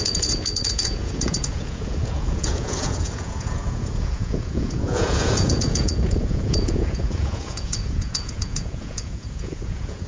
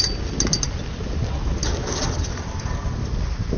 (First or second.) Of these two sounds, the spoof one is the first